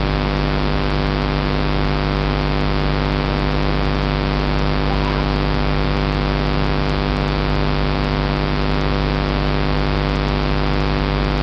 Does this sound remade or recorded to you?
recorded